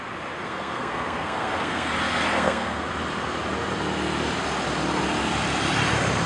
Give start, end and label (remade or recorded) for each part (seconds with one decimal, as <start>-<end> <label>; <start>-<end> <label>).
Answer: 0.0-0.4 recorded; 0.4-1.9 remade; 1.9-2.3 recorded; 2.3-2.9 remade; 2.9-6.3 recorded